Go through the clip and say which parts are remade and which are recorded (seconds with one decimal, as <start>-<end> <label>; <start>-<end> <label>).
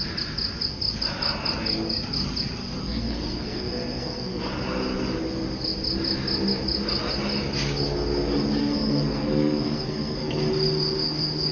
0.0-2.8 recorded; 2.8-4.4 remade; 4.4-8.6 recorded; 8.6-10.5 remade; 10.5-11.5 recorded